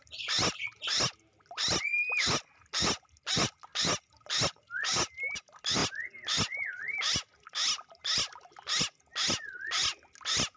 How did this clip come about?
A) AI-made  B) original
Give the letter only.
B